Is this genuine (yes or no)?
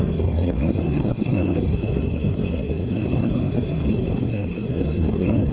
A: no